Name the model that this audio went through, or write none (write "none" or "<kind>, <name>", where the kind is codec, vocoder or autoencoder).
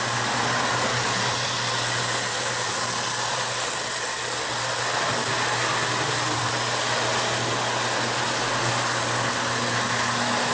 none